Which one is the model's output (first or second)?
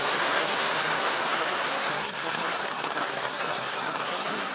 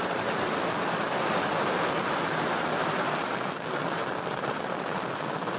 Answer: first